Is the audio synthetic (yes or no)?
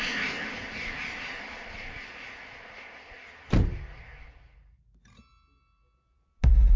no